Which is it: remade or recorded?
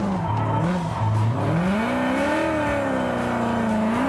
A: recorded